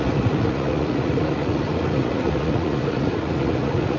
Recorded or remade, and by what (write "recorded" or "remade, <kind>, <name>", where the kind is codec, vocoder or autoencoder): remade, vocoder, Vocos